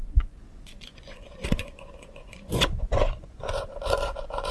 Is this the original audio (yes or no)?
no